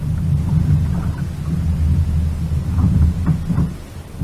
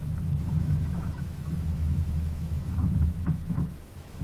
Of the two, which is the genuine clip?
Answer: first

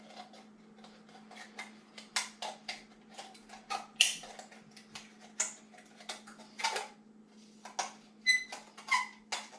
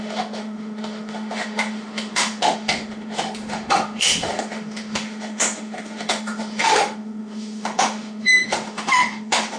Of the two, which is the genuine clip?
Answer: first